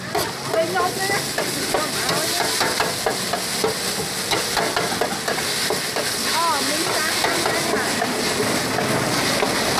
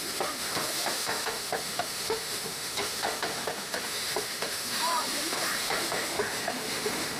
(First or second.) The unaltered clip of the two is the first